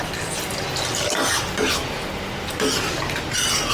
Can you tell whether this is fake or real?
real